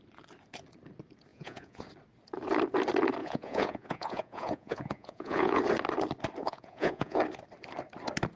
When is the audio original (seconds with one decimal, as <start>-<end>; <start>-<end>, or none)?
0.0-1.3; 1.8-3.2; 5.6-6.4; 7.2-8.4

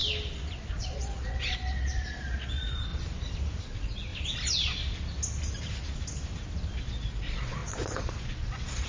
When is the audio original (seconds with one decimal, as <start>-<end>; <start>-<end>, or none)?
0.0-0.7; 2.9-3.6; 4.1-6.8

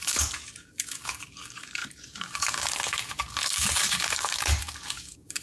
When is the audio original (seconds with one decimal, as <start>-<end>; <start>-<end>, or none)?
none

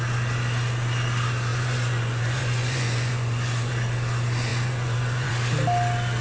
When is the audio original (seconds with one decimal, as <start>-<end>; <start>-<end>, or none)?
0.0-1.5; 3.7-4.5; 5.3-6.2

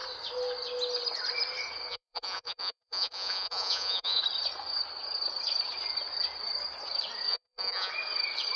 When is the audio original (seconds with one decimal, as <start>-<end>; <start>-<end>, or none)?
0.0-1.9; 4.2-7.3; 7.9-8.6

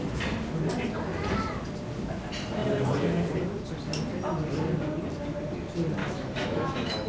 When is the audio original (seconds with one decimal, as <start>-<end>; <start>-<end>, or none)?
0.0-6.0

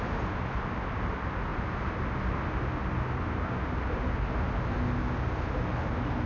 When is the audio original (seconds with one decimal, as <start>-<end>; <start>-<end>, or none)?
0.0-6.3